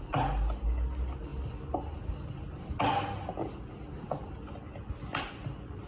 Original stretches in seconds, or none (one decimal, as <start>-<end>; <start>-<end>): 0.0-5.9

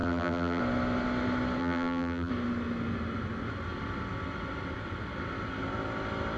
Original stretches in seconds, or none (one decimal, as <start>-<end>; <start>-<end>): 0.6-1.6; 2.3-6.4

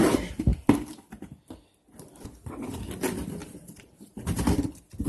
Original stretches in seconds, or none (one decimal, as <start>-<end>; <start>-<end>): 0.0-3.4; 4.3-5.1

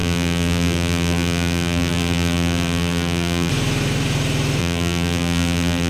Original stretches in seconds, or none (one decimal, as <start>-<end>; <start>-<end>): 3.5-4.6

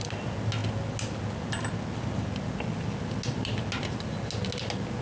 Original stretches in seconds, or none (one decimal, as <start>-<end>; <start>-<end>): 0.0-5.0

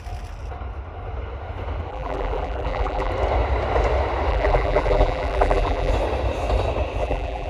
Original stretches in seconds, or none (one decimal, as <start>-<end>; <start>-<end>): 0.0-1.9; 3.1-4.3; 5.9-7.0

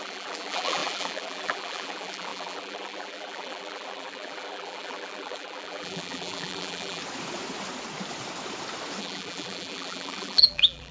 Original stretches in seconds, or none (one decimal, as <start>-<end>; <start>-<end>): 7.0-9.0